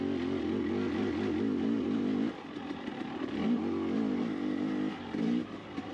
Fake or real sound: real